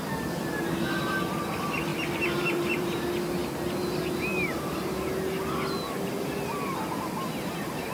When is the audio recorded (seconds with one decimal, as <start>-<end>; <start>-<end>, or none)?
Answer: 0.0-1.9; 3.0-7.9